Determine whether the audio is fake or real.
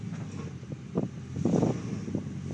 real